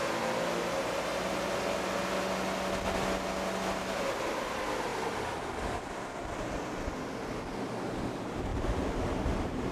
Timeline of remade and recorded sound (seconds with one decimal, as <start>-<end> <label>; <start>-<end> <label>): 0.0-8.5 recorded; 8.5-9.7 remade